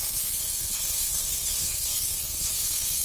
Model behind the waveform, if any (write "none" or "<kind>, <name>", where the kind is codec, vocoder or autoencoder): codec, SNAC